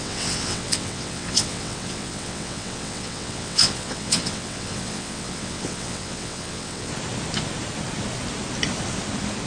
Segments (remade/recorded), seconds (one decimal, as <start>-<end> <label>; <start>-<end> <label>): 0.0-6.9 remade; 6.9-9.5 recorded